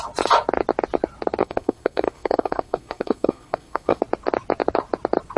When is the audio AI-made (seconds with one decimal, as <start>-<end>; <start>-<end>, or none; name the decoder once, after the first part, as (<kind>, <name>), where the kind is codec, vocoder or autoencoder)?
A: 1.4-4.0 (codec, SNAC)